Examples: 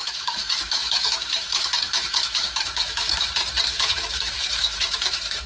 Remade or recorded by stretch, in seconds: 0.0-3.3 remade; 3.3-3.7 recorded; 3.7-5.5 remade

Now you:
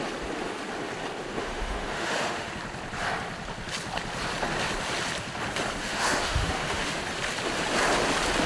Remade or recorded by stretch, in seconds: 0.0-1.4 recorded; 1.4-2.5 remade; 2.5-5.8 recorded; 5.8-7.0 remade; 7.0-8.5 recorded

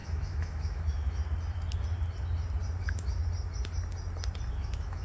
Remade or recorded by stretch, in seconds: 0.0-1.2 remade; 1.2-2.8 recorded; 2.8-3.2 remade; 3.2-4.5 recorded; 4.5-5.0 remade

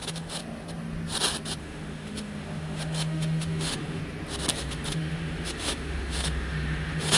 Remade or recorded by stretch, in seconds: 0.0-0.4 remade; 0.4-1.6 recorded; 1.6-4.0 remade; 4.0-4.6 recorded; 4.6-7.2 remade

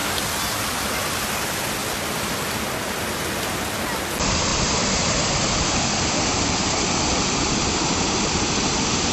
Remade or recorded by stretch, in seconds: 0.0-9.1 recorded

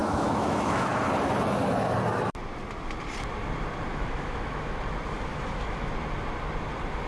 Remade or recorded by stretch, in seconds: 0.0-0.9 remade; 0.9-3.9 recorded; 3.9-4.8 remade; 4.8-5.3 recorded; 5.3-5.9 remade; 5.9-7.1 recorded

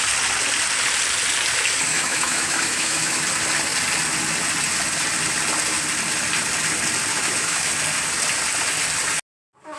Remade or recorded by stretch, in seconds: 0.0-1.9 recorded; 1.9-3.2 remade; 3.2-7.1 recorded; 7.1-7.7 remade; 7.7-9.8 recorded